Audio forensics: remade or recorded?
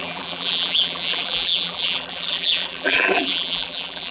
remade